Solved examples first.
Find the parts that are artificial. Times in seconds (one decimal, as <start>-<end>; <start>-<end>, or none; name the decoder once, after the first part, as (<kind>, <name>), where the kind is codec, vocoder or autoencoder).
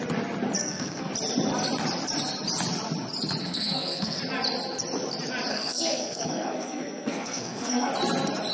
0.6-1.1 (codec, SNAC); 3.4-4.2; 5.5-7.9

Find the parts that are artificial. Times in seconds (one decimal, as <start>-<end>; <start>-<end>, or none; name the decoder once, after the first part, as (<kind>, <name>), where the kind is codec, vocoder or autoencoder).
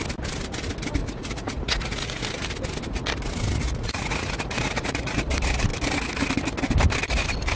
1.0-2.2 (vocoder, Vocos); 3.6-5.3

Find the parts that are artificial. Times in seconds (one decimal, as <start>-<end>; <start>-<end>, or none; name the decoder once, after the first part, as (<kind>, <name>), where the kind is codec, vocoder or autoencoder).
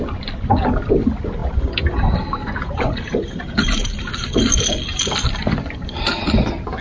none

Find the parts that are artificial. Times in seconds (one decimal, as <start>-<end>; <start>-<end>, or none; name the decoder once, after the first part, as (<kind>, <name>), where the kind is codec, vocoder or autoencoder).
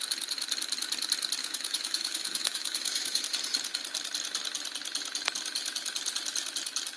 1.4-3.2 (autoencoder, DAC-VAE)